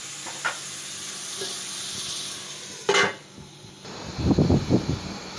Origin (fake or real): real